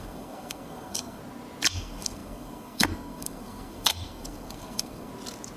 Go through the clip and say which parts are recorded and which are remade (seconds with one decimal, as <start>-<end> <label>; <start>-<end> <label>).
0.0-1.2 remade; 1.2-1.7 recorded; 1.7-5.1 remade; 5.1-5.6 recorded